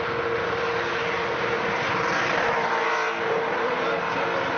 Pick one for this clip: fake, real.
real